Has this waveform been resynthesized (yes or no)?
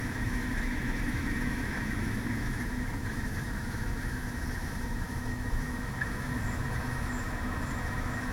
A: yes